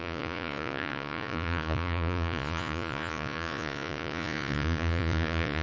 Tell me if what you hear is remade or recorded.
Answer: remade